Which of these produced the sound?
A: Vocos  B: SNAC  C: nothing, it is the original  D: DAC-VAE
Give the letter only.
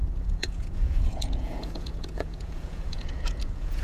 A